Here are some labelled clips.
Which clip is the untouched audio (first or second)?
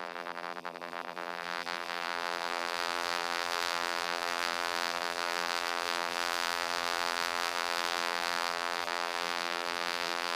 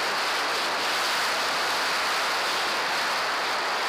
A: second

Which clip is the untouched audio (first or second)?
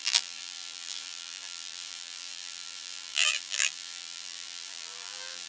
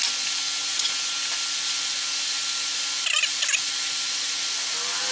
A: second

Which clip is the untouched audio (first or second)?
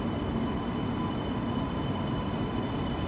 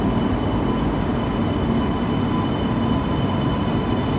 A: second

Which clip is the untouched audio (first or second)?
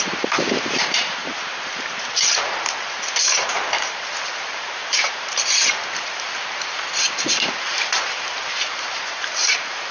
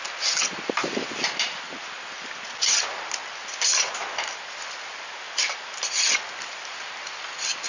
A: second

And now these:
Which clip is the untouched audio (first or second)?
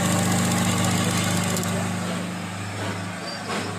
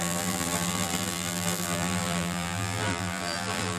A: first